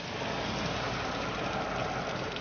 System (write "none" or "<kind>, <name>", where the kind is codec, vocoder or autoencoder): none